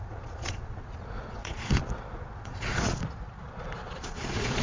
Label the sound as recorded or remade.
remade